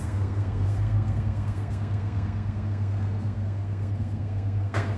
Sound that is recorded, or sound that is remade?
remade